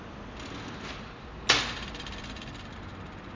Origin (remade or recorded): recorded